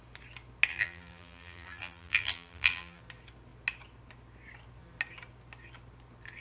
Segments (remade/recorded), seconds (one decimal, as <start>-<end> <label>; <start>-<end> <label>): 0.0-0.7 recorded; 0.7-3.0 remade; 3.0-6.4 recorded